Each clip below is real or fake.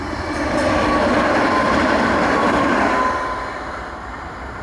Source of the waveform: fake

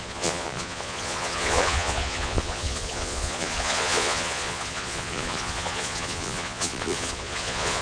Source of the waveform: fake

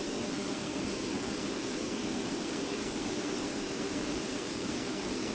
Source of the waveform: fake